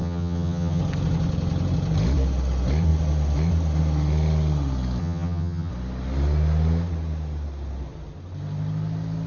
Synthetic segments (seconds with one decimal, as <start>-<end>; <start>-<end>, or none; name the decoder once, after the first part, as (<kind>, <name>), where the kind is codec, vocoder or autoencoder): 0.0-0.8 (vocoder, HiFi-GAN); 5.0-5.7